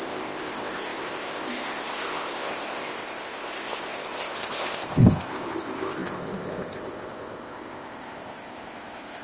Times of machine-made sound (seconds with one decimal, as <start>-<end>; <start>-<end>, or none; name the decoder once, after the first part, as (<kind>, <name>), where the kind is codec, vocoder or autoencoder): 0.0-9.2 (codec, ZipCodec)